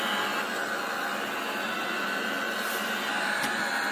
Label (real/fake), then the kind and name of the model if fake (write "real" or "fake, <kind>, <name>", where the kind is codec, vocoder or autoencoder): real